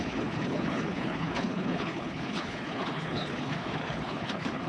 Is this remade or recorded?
remade